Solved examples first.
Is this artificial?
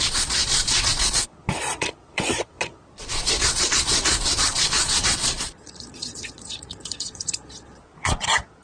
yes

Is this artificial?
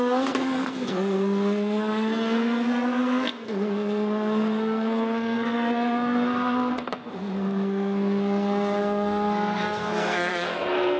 yes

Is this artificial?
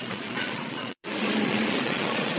yes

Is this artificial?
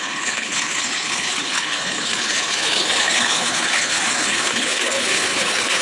yes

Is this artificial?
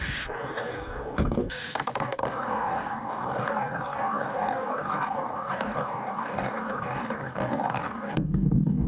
yes